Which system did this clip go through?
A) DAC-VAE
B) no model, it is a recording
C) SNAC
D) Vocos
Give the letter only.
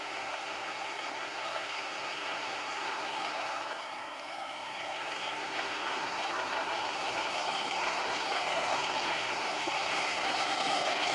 C